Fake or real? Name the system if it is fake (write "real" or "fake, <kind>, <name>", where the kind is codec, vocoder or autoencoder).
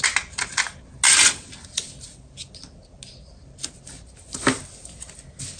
real